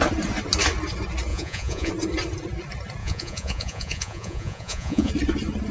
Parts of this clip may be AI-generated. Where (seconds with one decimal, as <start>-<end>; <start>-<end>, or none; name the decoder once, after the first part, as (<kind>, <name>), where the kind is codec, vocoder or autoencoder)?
1.3-1.9 (vocoder, Vocos); 3.0-5.1